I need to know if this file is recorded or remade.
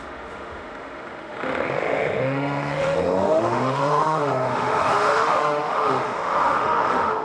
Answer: remade